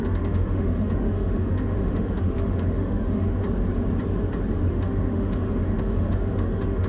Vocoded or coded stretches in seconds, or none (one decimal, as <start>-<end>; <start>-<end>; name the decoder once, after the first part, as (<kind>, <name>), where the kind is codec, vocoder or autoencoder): 0.0-3.4 (autoencoder, DAC-VAE); 4.7-6.9

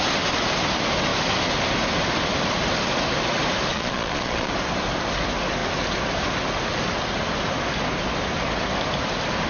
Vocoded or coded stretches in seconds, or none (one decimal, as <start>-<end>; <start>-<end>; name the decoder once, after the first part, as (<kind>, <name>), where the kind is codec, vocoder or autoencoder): 3.7-4.5 (vocoder, Vocos)

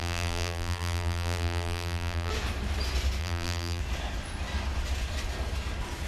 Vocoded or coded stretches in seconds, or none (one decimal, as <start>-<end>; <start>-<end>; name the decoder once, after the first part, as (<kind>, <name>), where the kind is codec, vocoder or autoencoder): 0.0-2.3 (vocoder, BigVGAN v2); 3.2-3.8